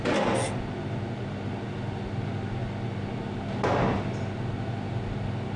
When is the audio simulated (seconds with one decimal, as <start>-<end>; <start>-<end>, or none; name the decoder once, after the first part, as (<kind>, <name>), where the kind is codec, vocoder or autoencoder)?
none